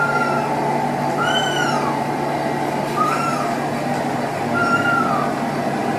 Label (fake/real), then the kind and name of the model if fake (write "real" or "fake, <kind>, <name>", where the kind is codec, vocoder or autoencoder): fake, vocoder, BigVGAN v2